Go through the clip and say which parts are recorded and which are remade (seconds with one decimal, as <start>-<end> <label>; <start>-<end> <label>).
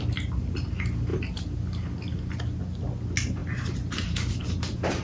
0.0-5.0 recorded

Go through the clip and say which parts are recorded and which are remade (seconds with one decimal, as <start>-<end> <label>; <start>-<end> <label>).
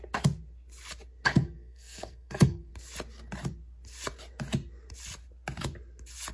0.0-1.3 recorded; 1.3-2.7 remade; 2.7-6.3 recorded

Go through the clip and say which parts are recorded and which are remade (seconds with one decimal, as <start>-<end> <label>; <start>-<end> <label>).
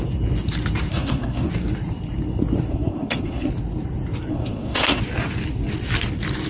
0.0-0.9 recorded; 0.9-1.5 remade; 1.5-2.7 recorded; 2.7-3.5 remade; 3.5-4.3 recorded; 4.3-5.0 remade; 5.0-6.5 recorded